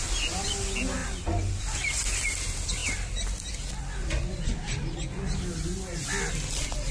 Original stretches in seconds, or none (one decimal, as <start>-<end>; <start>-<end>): 0.0-6.9